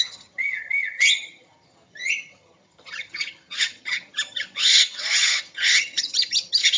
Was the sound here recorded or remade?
remade